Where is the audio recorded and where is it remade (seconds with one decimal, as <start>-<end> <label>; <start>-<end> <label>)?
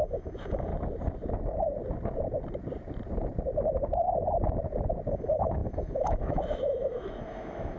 0.0-0.7 remade; 0.7-5.1 recorded; 5.1-7.8 remade